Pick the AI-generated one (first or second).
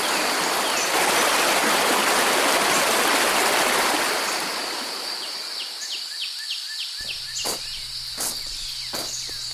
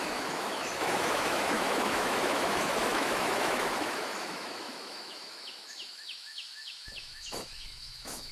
second